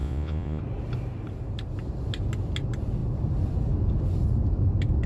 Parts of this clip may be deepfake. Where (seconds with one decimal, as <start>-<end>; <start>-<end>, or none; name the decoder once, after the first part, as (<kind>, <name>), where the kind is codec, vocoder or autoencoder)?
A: 0.0-0.6 (vocoder, Vocos)